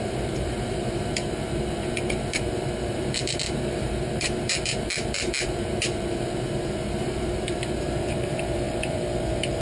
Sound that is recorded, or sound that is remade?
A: remade